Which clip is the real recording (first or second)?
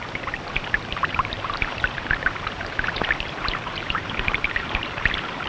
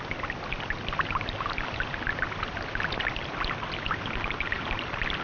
second